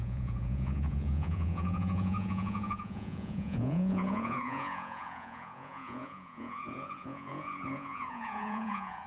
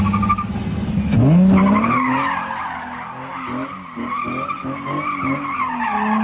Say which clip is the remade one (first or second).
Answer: first